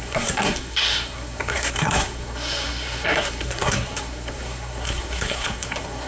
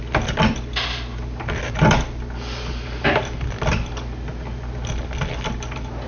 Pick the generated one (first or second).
first